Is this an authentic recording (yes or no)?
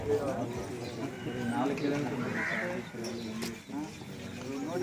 yes